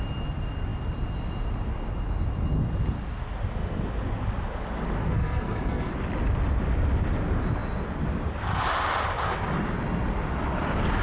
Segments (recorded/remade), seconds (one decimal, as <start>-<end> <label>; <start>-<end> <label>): 0.0-5.0 recorded; 5.0-5.9 remade; 5.9-11.0 recorded